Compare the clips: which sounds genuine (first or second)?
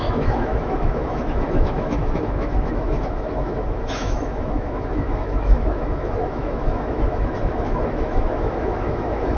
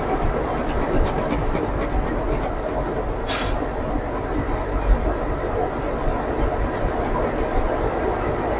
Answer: second